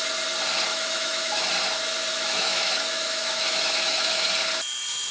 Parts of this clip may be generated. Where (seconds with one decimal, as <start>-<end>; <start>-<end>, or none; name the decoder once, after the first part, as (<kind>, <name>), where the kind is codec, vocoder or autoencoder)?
0.7-1.5 (autoencoder, DAC-VAE); 2.1-4.3